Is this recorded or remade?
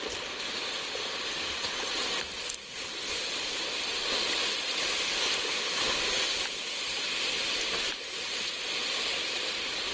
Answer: remade